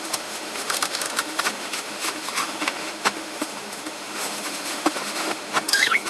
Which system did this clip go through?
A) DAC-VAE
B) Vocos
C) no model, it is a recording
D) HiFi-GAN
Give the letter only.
A